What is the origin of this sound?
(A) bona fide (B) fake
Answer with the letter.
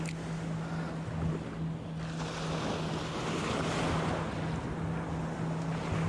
A